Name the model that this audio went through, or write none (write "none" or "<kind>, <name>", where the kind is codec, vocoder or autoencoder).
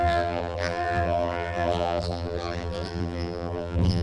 vocoder, BigVGAN v2